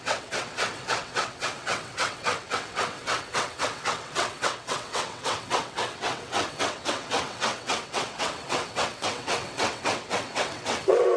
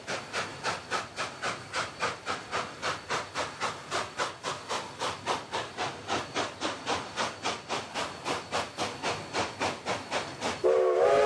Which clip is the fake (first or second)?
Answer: first